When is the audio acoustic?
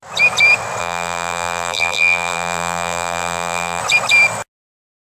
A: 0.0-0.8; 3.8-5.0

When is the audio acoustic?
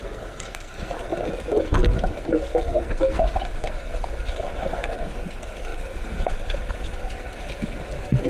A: none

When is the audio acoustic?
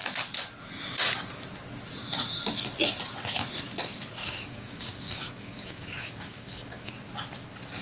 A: 0.0-4.2; 6.9-7.8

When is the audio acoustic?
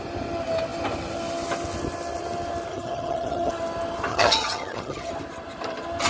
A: 0.0-2.7; 3.5-4.1; 5.1-6.1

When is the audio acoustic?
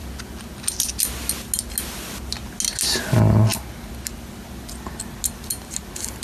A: 0.0-6.2